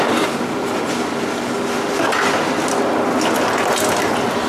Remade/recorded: recorded